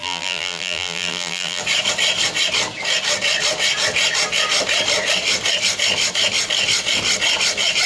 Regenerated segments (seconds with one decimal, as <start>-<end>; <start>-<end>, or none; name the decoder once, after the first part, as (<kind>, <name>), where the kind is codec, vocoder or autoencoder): 0.0-1.6 (vocoder, BigVGAN v2)